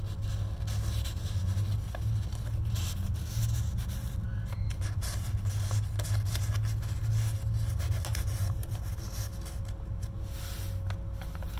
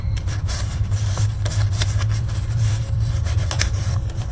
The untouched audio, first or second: first